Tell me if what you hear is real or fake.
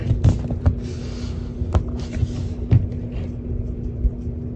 real